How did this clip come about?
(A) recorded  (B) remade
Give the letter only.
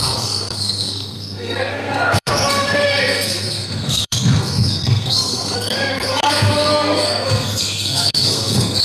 B